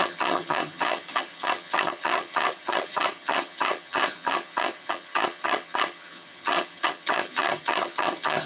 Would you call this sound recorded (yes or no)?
no